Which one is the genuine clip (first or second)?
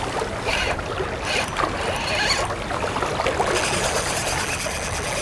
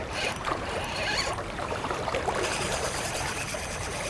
first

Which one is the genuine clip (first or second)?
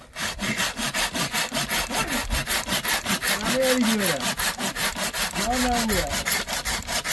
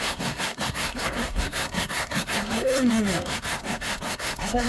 first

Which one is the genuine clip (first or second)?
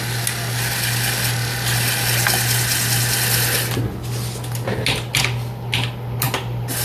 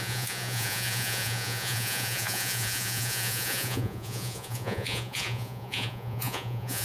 first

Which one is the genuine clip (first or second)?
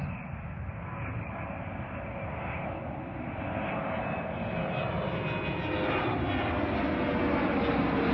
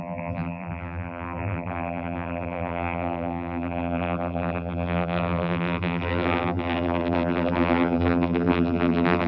first